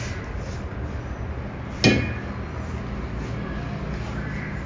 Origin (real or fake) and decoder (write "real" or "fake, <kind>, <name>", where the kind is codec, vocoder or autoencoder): real